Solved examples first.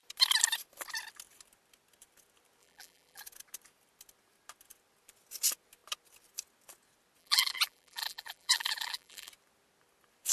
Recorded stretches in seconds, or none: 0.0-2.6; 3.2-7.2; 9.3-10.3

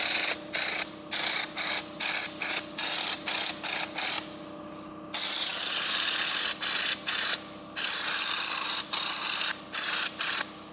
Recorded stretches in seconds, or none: 0.0-10.7

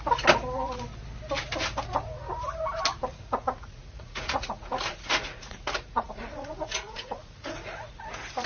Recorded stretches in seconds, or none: 0.0-3.1; 7.9-8.5

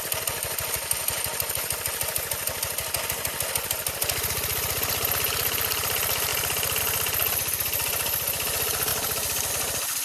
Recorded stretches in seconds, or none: 0.0-8.9; 9.5-10.0

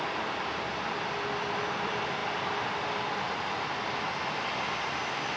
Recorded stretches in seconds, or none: 0.0-5.4

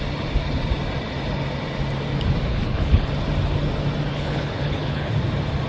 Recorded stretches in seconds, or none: 0.0-2.5; 3.1-4.1; 5.1-5.7

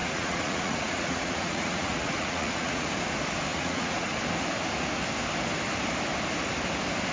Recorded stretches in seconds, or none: 2.9-3.5; 4.1-7.1

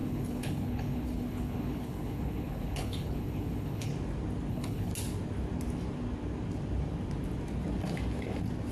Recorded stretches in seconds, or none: 3.9-4.5; 4.9-8.7